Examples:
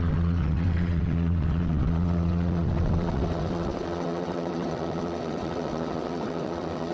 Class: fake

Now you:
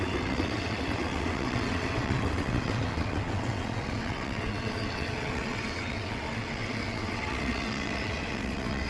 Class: fake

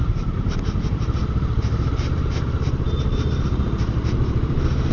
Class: real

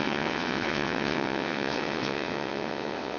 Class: fake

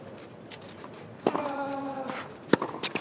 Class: real